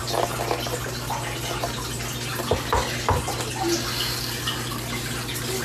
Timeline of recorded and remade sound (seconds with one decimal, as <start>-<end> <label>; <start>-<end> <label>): 0.0-5.6 recorded